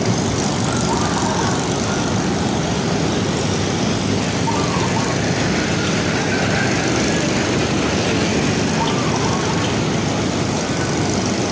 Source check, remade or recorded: recorded